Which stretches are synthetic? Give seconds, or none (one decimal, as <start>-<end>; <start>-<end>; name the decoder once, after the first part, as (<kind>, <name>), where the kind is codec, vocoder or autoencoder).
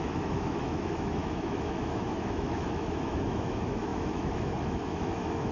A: 0.0-5.5 (autoencoder, DAC-VAE)